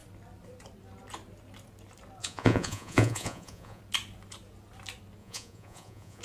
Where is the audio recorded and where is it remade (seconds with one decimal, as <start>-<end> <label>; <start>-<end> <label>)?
0.0-2.2 recorded; 2.2-3.8 remade; 3.8-5.2 recorded; 5.2-6.2 remade